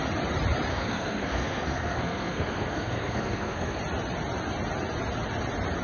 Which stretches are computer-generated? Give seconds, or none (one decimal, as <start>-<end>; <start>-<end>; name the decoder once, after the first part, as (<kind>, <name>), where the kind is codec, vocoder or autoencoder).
0.7-3.8 (codec, SNAC)